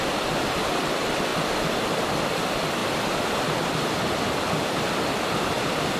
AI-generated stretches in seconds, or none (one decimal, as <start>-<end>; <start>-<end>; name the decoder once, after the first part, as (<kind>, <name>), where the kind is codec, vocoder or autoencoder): none